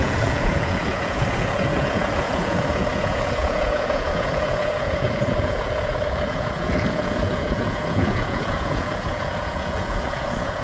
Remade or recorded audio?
remade